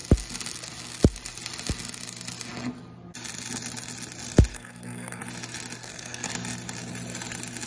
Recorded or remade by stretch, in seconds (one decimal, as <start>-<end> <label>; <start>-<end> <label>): 0.0-4.5 recorded; 4.5-5.2 remade; 5.2-5.8 recorded; 5.8-6.3 remade; 6.3-7.7 recorded